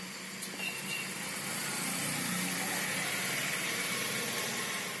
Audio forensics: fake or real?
real